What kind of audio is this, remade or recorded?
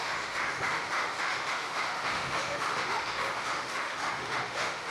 remade